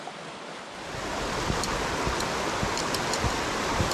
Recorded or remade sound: recorded